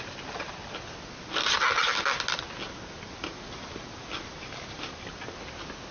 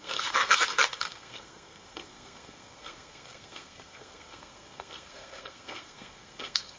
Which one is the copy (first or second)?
second